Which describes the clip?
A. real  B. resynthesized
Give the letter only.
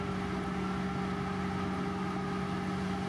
A